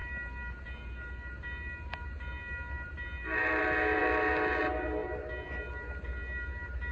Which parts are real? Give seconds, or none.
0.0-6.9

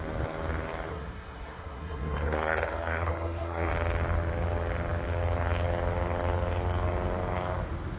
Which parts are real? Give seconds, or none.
0.0-0.9; 3.7-8.0

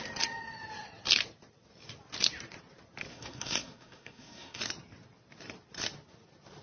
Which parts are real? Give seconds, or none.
0.0-3.1; 4.6-6.6